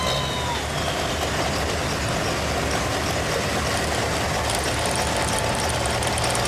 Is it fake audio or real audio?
real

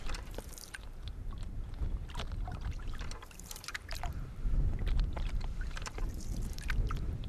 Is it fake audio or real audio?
fake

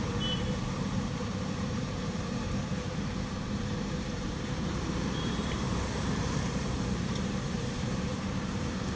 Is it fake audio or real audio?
fake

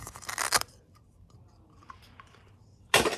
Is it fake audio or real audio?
fake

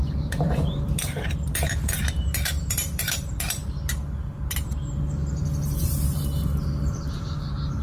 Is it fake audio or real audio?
fake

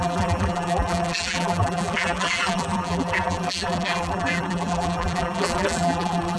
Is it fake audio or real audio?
fake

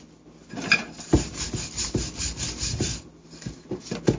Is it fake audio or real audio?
fake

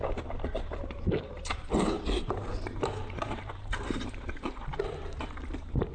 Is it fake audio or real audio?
fake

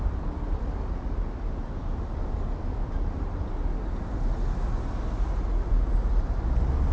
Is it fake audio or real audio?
real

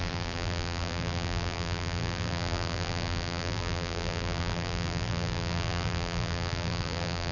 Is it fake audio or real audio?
fake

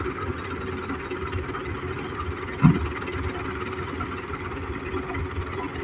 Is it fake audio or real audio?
real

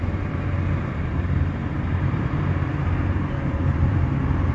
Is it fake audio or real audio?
fake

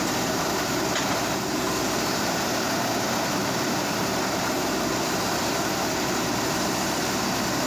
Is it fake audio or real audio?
fake